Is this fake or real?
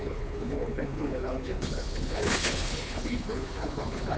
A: fake